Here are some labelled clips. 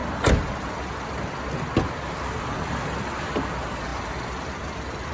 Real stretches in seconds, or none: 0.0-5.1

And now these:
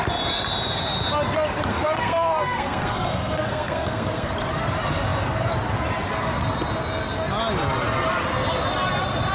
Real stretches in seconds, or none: 0.0-1.7; 4.3-9.3

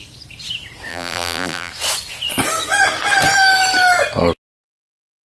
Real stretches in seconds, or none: 0.0-0.9; 1.7-5.2

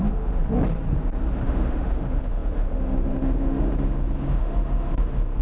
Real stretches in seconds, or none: 0.4-1.3

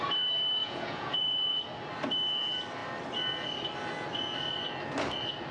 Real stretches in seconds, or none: 0.0-0.6; 1.6-5.5

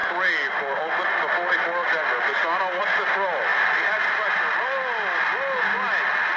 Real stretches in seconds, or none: 0.0-6.4

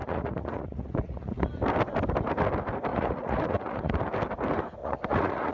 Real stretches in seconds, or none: 1.5-2.9; 4.0-4.8

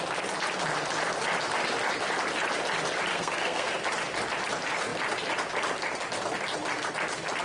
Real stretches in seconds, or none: 0.0-3.1; 3.7-7.4